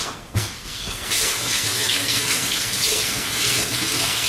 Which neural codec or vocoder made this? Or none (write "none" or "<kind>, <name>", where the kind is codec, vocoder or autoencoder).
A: codec, SNAC